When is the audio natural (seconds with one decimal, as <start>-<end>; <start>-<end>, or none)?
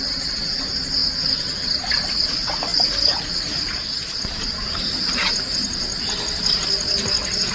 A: 0.0-7.5